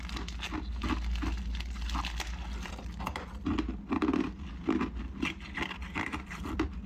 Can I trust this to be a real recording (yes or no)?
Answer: yes